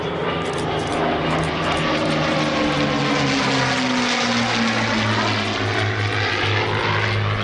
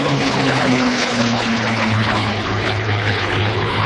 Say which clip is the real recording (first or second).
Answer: first